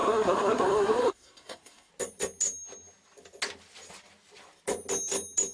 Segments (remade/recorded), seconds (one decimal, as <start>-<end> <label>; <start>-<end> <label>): 0.0-1.9 remade; 1.9-5.5 recorded